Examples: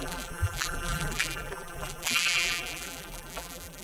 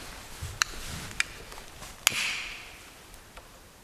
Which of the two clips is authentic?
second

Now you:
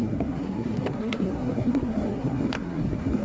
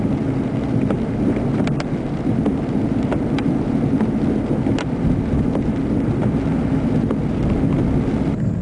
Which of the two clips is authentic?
second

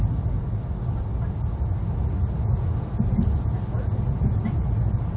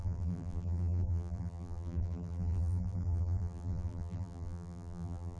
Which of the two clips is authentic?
first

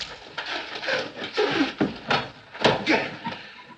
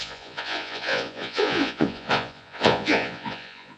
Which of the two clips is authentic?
first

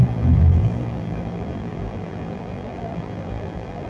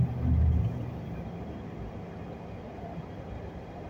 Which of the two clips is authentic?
second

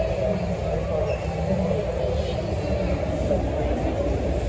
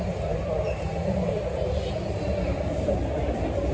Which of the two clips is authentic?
first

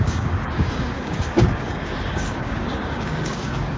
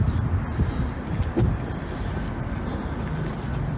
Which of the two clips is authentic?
second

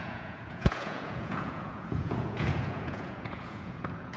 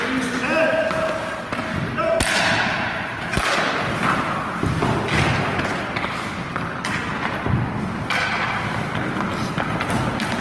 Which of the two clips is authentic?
second